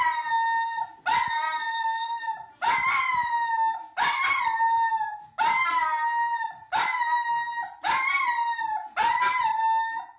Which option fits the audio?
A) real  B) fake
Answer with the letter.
A